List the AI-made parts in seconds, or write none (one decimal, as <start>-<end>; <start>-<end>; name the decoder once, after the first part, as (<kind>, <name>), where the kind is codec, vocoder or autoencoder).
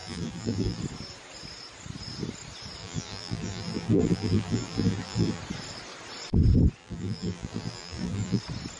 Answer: 0.0-0.8 (vocoder, BigVGAN v2); 2.8-5.4; 6.8-8.4